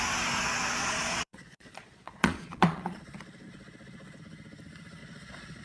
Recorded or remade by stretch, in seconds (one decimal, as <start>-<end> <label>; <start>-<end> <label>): 0.0-0.8 recorded; 0.8-4.2 remade; 4.2-5.0 recorded; 5.0-5.6 remade